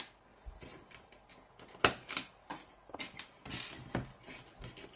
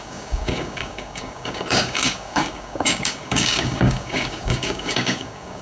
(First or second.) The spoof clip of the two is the second